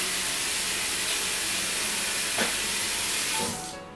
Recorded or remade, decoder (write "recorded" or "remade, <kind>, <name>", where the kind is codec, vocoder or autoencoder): recorded